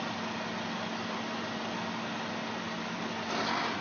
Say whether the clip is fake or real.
real